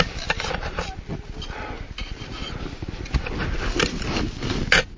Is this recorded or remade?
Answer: recorded